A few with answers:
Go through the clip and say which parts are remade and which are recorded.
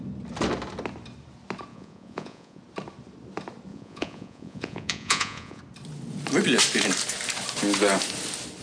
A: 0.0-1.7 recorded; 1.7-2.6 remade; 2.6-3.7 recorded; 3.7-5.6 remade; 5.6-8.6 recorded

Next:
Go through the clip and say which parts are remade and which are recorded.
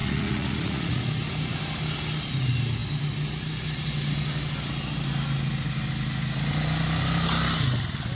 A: 0.0-1.0 remade; 1.0-8.1 recorded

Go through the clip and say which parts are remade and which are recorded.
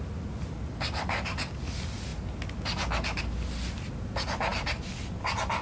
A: 0.0-5.6 recorded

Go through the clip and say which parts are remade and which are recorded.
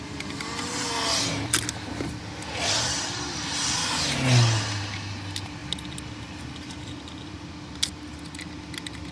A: 0.0-9.1 recorded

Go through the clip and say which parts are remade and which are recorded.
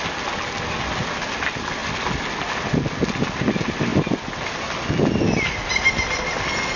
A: 0.0-6.8 recorded